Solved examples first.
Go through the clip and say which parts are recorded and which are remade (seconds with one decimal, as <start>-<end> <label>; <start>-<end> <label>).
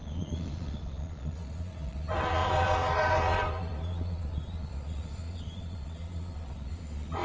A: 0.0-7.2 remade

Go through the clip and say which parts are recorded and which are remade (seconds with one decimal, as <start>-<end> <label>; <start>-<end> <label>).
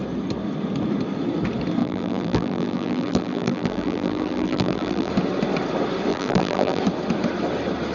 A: 0.0-1.8 recorded; 1.8-5.1 remade; 5.1-6.1 recorded; 6.1-6.8 remade; 6.8-7.9 recorded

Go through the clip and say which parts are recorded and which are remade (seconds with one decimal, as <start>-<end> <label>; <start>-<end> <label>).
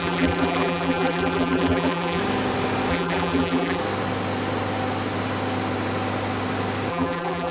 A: 0.0-2.2 remade; 2.2-2.9 recorded; 2.9-3.8 remade; 3.8-6.9 recorded; 6.9-7.5 remade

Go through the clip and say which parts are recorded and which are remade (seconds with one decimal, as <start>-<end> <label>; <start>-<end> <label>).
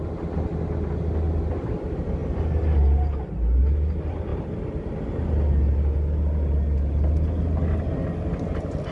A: 0.0-8.9 recorded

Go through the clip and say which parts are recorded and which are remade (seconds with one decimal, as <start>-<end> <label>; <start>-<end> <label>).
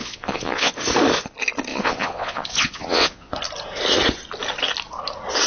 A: 0.0-0.7 remade; 0.7-1.7 recorded; 1.7-3.3 remade; 3.3-5.5 recorded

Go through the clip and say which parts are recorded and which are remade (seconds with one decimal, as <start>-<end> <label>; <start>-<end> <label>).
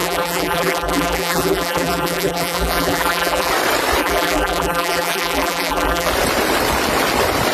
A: 0.0-3.5 remade; 3.5-4.0 recorded; 4.0-6.1 remade; 6.1-7.5 recorded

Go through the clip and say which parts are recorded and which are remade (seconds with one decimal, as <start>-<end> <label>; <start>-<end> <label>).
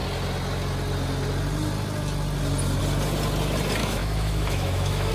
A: 0.0-3.8 recorded; 3.8-5.1 remade